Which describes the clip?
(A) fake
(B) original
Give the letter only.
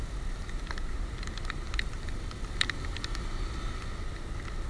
B